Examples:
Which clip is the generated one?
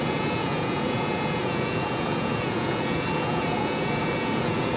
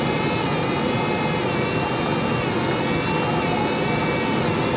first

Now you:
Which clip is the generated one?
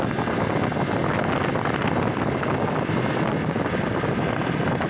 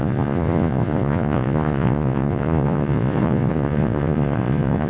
second